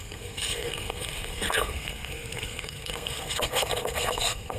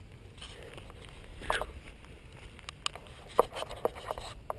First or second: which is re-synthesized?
first